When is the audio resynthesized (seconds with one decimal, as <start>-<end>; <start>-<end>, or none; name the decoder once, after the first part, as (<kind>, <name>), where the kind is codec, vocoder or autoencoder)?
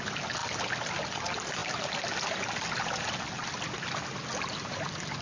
none